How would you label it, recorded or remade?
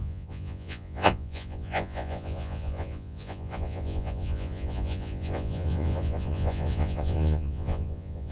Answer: remade